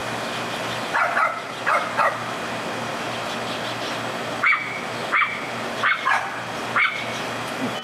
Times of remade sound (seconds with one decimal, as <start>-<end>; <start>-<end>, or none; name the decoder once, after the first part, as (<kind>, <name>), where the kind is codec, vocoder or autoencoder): none